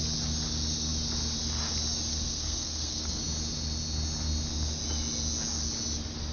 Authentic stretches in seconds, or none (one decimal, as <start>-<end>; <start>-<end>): 0.0-2.1; 3.2-6.3